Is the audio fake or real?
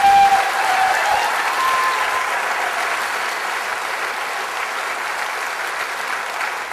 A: real